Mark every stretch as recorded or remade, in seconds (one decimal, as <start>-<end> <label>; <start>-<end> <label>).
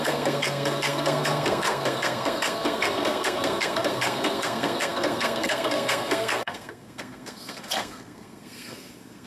0.0-9.3 remade